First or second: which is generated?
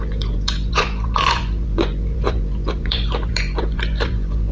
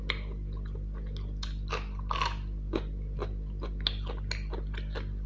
first